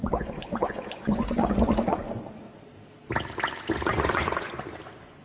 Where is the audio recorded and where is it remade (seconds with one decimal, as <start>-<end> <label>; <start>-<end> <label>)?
0.0-2.2 remade; 2.2-3.9 recorded; 3.9-4.5 remade; 4.5-5.2 recorded